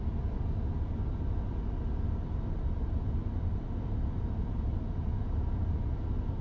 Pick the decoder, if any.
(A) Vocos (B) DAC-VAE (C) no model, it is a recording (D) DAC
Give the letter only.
C